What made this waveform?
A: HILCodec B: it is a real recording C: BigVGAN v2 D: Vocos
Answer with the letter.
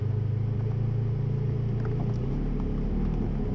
B